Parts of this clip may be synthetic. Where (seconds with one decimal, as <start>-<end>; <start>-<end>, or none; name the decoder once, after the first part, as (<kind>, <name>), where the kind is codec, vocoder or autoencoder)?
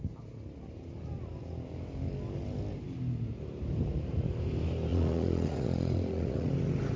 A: 4.9-6.5 (vocoder, Vocos)